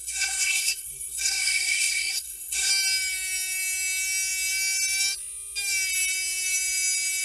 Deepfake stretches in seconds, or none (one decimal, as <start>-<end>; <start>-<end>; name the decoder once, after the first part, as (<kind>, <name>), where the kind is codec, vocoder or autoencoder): 0.0-2.7 (codec, SNAC)